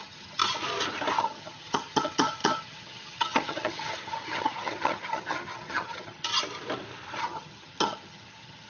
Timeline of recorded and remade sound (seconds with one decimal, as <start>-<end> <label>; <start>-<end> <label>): 0.0-0.4 remade; 0.4-1.2 recorded; 1.2-6.3 remade; 6.3-7.2 recorded; 7.2-8.7 remade